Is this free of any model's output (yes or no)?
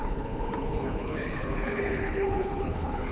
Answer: no